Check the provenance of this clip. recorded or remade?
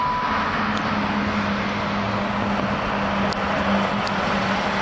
recorded